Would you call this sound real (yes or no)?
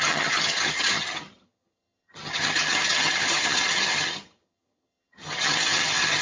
no